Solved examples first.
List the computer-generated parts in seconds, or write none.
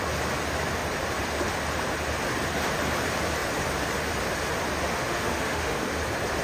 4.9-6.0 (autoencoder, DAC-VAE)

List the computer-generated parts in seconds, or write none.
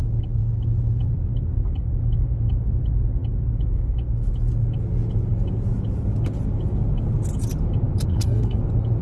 8.1-8.6 (codec, SNAC)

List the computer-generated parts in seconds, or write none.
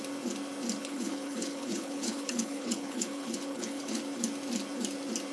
0.8-4.0 (codec, HILCodec)